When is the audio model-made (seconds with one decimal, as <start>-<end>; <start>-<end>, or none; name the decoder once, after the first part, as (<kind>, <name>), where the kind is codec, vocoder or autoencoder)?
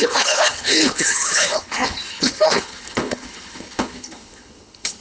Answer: 0.0-5.0 (codec, HILCodec)